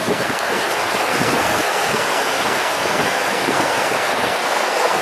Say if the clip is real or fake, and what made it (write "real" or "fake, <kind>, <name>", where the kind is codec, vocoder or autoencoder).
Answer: fake, codec, SNAC